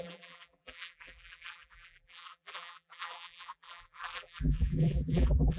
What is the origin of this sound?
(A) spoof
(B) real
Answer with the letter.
A